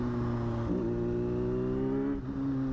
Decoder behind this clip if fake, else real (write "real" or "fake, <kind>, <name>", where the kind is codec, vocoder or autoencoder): real